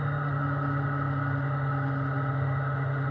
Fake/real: real